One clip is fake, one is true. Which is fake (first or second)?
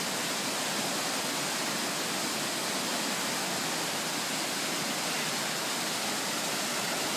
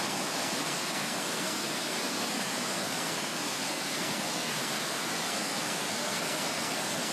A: second